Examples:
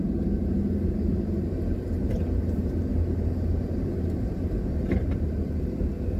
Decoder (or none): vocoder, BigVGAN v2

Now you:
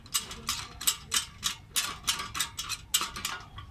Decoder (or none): none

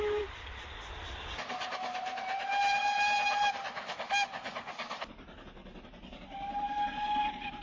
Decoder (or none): none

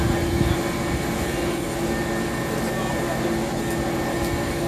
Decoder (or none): none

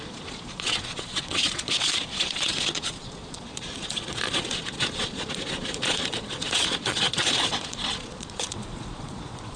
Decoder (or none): vocoder, Vocos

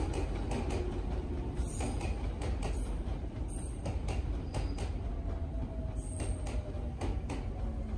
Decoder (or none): none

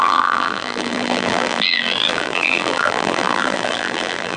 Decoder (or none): vocoder, BigVGAN v2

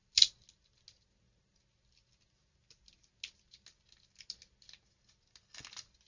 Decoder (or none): none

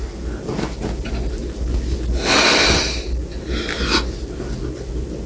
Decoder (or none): none